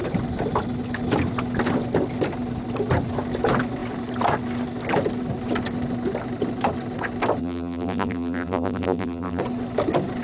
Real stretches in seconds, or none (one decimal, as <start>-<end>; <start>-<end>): 0.0-7.4; 9.4-10.2